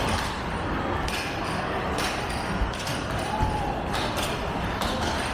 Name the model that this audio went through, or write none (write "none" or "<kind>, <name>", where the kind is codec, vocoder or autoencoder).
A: none